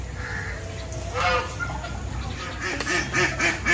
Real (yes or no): yes